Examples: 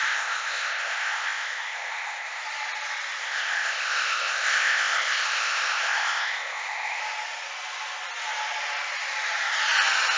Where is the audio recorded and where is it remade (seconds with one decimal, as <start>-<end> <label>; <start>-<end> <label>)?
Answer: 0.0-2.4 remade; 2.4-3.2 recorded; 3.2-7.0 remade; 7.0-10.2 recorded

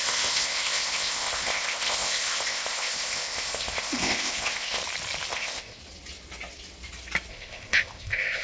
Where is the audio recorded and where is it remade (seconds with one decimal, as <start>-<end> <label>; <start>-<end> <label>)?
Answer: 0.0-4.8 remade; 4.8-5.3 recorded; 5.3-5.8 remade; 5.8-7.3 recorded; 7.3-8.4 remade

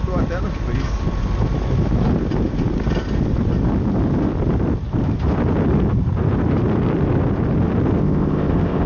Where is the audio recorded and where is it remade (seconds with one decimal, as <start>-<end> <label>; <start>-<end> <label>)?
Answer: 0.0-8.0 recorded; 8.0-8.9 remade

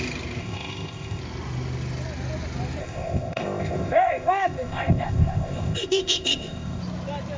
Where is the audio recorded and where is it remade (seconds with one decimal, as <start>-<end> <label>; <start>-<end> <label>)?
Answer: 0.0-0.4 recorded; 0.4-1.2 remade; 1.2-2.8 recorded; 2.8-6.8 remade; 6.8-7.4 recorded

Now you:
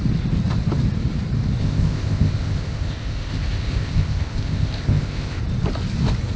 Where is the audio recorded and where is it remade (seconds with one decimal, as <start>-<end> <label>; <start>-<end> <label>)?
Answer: 0.0-1.6 recorded; 1.6-5.4 remade; 5.4-6.4 recorded

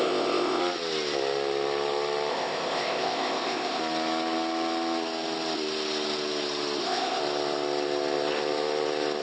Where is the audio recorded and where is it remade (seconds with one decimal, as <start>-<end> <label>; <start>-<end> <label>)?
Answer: 0.0-0.6 remade; 0.6-2.3 recorded; 2.3-3.8 remade; 3.8-6.8 recorded; 6.8-7.2 remade; 7.2-9.2 recorded

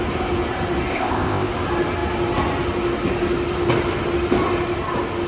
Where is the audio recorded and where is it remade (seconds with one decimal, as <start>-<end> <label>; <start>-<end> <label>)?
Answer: 0.0-0.9 recorded; 0.9-1.5 remade; 1.5-5.3 recorded

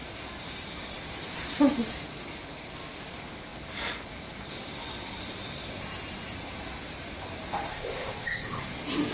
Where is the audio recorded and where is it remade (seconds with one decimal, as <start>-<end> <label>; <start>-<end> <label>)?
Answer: 0.0-7.7 recorded; 7.7-8.6 remade; 8.6-9.1 recorded